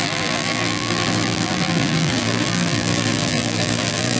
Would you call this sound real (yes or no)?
no